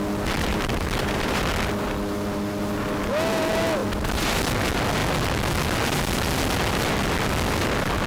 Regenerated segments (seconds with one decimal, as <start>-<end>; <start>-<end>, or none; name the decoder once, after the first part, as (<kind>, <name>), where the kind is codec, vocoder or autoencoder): 0.5-1.4 (vocoder, BigVGAN v2); 3.8-4.4